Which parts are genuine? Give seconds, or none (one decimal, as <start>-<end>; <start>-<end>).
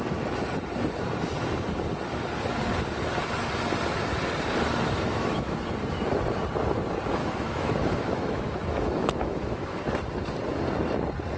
0.0-5.1; 5.7-7.2; 9.8-11.4